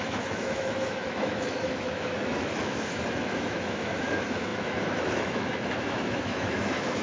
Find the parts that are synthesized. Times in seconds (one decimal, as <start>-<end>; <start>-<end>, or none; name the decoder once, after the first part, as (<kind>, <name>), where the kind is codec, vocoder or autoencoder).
0.0-7.0 (autoencoder, DAC-VAE)